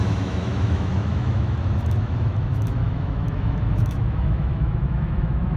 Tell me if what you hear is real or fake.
fake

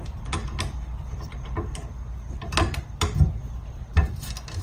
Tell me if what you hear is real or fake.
real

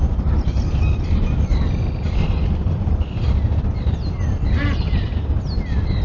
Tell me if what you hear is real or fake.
real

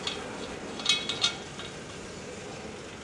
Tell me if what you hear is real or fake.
real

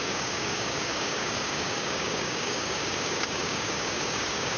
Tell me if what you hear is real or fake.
fake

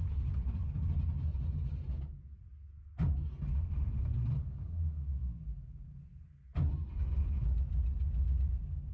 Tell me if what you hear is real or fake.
real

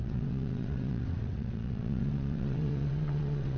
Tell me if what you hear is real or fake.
fake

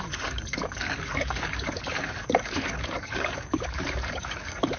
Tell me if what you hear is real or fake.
fake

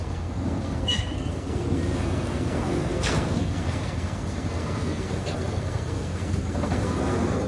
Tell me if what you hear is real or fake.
fake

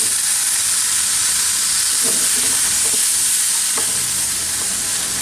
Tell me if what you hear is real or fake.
real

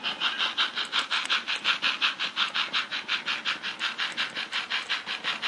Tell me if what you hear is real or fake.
real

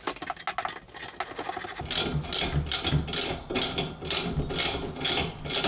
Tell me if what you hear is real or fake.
real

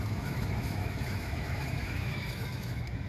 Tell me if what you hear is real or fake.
fake